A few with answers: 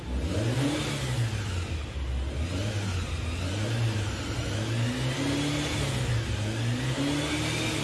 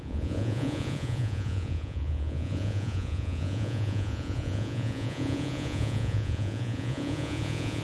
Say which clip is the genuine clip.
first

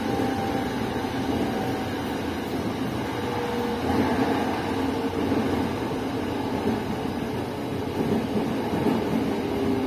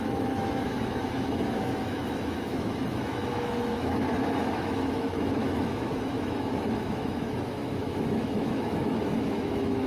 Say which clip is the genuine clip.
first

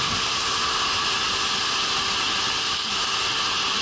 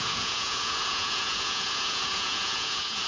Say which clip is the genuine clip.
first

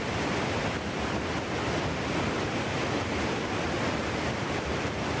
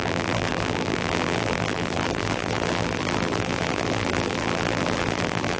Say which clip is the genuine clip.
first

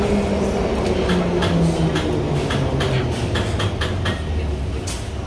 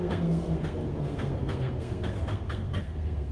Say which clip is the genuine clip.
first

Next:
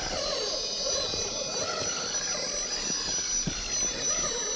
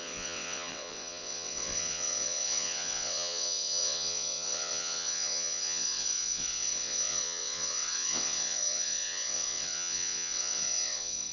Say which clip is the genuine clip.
first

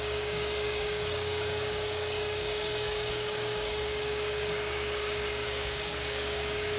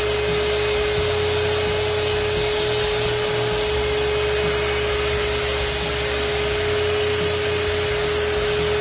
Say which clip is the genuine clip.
second